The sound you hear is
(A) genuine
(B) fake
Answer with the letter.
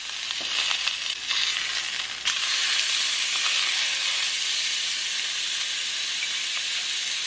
A